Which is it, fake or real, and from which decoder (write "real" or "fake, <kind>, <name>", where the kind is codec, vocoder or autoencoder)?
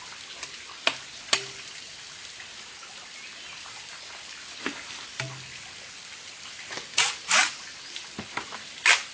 real